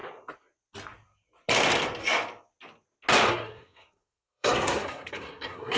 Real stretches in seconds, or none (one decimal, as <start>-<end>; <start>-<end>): 0.0-3.3